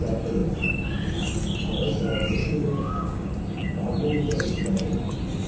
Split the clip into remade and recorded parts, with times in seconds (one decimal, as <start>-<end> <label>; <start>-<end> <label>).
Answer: 0.0-2.4 recorded; 2.4-3.3 remade; 3.3-5.5 recorded